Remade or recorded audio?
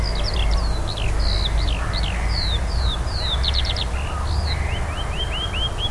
recorded